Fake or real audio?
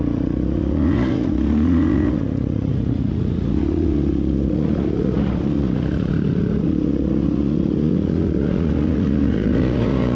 fake